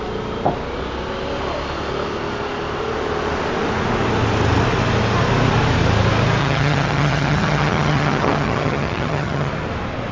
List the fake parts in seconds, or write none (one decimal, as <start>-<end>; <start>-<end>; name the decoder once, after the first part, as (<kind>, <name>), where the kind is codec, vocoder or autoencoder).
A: 6.4-9.5 (vocoder, HiFi-GAN)